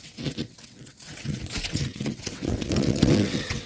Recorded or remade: remade